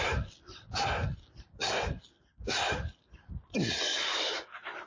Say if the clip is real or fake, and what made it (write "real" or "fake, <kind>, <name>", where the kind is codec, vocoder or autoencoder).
real